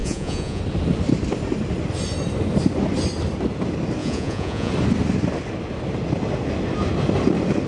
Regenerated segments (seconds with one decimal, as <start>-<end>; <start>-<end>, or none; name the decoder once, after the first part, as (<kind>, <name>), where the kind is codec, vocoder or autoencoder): 0.0-0.6 (vocoder, Vocos); 4.0-4.7